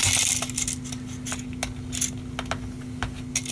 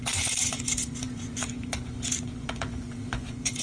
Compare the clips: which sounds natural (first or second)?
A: first